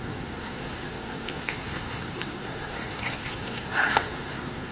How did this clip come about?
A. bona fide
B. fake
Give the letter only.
B